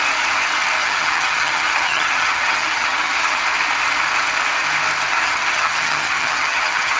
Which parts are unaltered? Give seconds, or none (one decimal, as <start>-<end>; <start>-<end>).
0.0-0.8; 3.4-5.1